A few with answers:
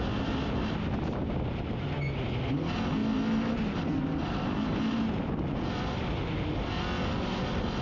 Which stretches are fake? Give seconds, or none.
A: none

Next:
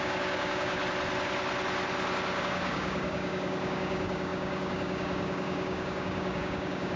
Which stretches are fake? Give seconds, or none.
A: 0.0-0.8 (codec, DAC); 2.4-7.0

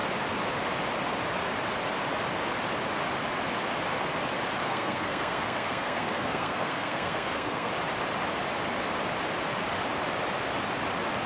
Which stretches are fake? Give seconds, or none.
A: 4.6-7.7 (codec, SNAC)

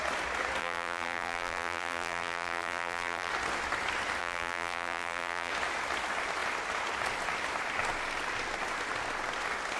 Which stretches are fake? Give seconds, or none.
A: 0.6-3.3 (vocoder, BigVGAN v2); 4.2-5.5

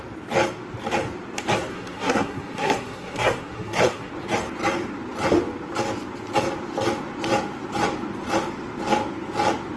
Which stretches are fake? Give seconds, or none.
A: 1.7-4.1 (codec, SNAC)

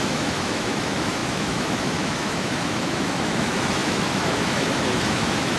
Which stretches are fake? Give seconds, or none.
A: 0.0-5.6 (autoencoder, DAC-VAE)